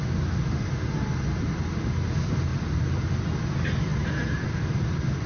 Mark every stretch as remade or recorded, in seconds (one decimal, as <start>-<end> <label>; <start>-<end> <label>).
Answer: 0.0-5.3 recorded

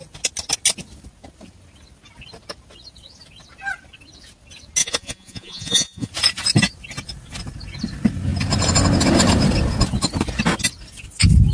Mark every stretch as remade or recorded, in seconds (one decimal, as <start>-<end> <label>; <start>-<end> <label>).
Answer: 0.0-4.8 recorded; 4.8-6.1 remade; 6.1-11.5 recorded

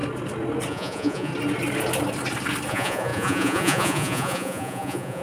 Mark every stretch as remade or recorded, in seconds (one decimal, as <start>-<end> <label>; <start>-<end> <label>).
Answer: 0.0-0.7 recorded; 0.7-1.3 remade; 1.3-2.7 recorded; 2.7-5.2 remade

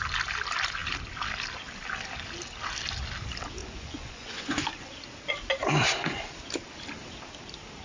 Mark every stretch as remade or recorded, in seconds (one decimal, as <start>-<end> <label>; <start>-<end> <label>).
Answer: 0.0-3.6 recorded; 3.6-4.9 remade; 4.9-5.6 recorded; 5.6-6.2 remade; 6.2-7.8 recorded